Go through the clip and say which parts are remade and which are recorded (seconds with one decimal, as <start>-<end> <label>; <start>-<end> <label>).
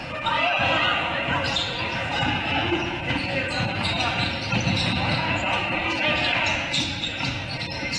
0.0-7.4 remade; 7.4-8.0 recorded